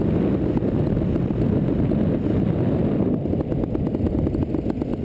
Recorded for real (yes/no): no